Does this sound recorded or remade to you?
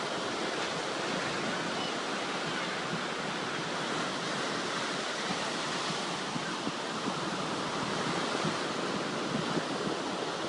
recorded